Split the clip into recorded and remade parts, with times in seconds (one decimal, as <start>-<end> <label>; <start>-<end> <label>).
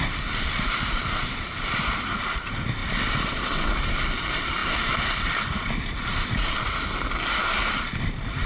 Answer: 0.0-2.8 remade; 2.8-3.7 recorded; 3.7-8.5 remade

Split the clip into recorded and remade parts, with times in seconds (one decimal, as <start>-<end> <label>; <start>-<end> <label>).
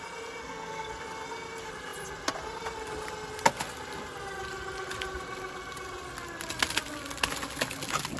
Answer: 0.0-0.4 recorded; 0.4-1.0 remade; 1.0-8.2 recorded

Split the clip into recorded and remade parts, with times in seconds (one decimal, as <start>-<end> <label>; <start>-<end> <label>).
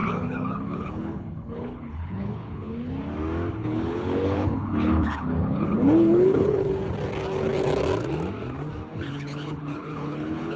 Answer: 0.0-2.9 remade; 2.9-3.6 recorded; 3.6-6.7 remade; 6.7-8.9 recorded; 8.9-10.6 remade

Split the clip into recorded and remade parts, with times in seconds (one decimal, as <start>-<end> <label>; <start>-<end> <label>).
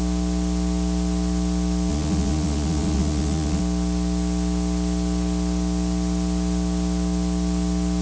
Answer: 0.0-1.9 recorded; 1.9-3.6 remade; 3.6-8.0 recorded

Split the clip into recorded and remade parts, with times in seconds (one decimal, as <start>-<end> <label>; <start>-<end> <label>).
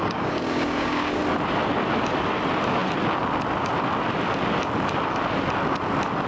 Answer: 0.0-1.2 remade; 1.2-6.3 recorded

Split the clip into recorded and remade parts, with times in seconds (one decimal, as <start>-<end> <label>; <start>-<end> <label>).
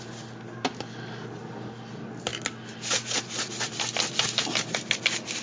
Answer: 0.0-5.4 recorded